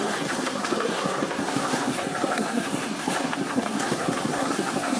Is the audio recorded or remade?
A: remade